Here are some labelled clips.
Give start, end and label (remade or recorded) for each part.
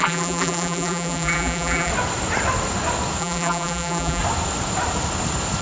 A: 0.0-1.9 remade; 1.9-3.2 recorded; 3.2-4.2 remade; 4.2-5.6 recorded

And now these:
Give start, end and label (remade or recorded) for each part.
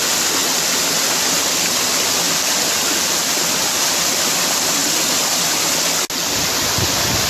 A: 0.0-7.3 recorded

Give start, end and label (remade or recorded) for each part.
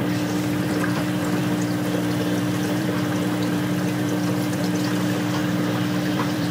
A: 0.0-1.4 remade; 1.4-2.4 recorded; 2.4-6.5 remade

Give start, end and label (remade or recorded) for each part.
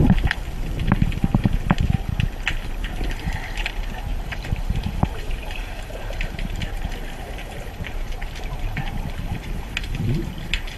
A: 0.0-4.1 recorded; 4.1-8.8 remade; 8.8-10.8 recorded